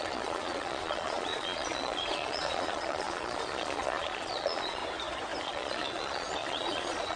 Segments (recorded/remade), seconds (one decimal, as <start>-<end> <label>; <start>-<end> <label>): 0.0-4.8 remade; 4.8-5.4 recorded; 5.4-7.2 remade